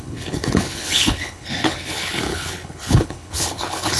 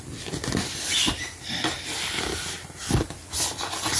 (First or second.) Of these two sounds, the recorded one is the second